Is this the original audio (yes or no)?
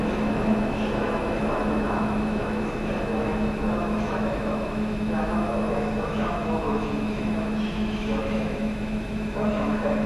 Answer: no